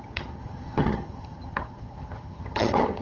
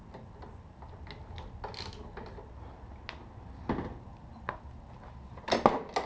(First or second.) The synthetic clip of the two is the first